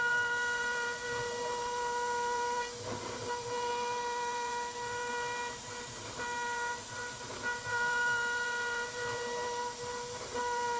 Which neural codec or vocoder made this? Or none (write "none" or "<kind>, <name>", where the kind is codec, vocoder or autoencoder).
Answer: vocoder, BigVGAN v2